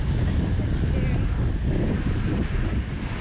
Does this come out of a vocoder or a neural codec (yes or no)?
no